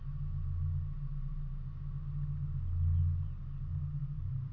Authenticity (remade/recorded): recorded